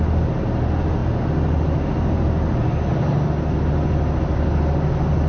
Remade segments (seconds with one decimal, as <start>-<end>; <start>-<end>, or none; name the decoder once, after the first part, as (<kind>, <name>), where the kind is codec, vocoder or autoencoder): none

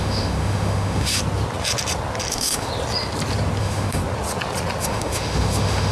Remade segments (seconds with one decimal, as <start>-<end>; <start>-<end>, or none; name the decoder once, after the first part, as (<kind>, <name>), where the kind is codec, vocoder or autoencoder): 0.0-1.2 (autoencoder, DAC-VAE); 2.3-2.7; 3.6-4.0; 4.8-5.9

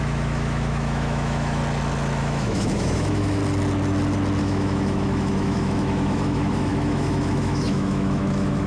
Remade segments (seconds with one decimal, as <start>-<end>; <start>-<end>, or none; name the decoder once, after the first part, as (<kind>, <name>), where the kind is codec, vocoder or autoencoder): 0.0-1.6 (autoencoder, DAC-VAE); 2.2-3.4; 4.4-8.7

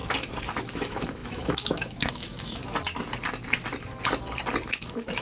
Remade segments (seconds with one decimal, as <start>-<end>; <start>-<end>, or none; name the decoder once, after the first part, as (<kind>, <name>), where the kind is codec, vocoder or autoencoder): 0.6-2.6 (autoencoder, DAC-VAE); 4.7-5.2

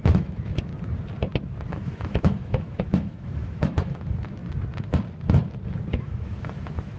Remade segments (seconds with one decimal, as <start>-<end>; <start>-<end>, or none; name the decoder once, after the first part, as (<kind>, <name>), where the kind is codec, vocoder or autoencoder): 0.0-0.7 (autoencoder, DAC-VAE); 1.7-4.4; 5.9-7.0

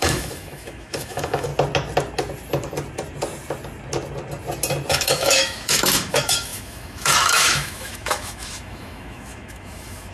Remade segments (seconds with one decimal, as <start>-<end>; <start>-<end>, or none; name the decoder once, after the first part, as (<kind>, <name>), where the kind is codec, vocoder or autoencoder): 0.0-1.5 (autoencoder, DAC-VAE); 4.9-10.1

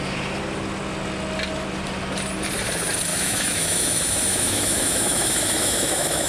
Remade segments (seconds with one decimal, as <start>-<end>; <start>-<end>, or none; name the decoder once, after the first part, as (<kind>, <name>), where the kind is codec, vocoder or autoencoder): 3.1-6.3 (autoencoder, DAC-VAE)